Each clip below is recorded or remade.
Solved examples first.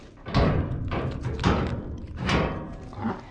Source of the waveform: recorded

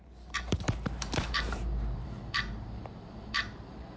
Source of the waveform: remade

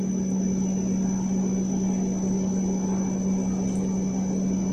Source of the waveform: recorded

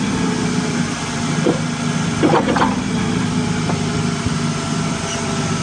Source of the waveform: remade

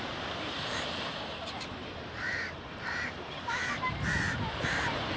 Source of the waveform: remade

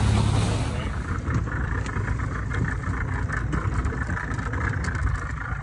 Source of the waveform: recorded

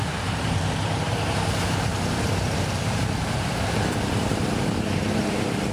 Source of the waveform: remade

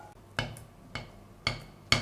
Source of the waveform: recorded